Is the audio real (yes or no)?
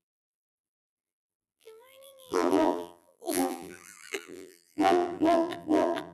no